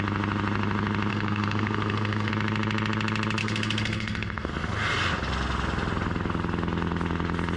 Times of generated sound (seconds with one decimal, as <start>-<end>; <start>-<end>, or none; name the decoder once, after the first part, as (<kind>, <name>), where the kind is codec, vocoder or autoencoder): 1.1-2.3 (codec, SNAC); 3.4-4.5